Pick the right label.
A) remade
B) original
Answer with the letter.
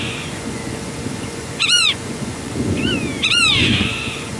A